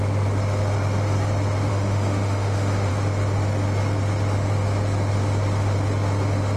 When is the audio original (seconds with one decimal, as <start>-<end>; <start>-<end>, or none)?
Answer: 0.0-1.7; 2.9-6.6